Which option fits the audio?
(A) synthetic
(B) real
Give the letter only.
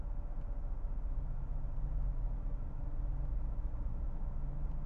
B